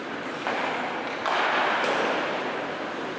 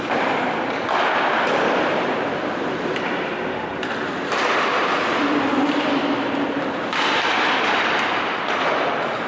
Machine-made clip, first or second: second